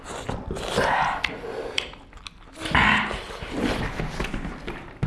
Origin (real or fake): real